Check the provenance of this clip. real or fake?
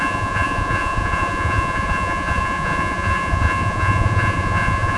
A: fake